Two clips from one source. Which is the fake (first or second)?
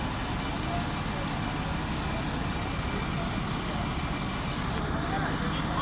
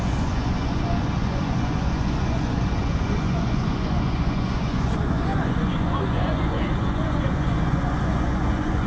second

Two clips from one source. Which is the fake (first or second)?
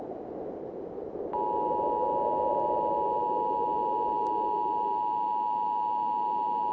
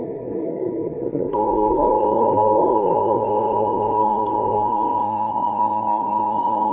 second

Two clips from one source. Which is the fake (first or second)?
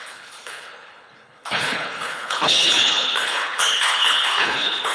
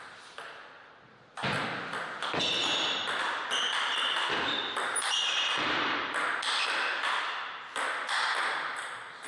first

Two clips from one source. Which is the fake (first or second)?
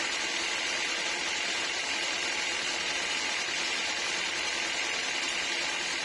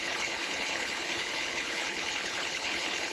second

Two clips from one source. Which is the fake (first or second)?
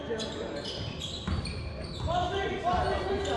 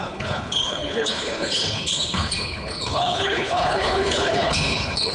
second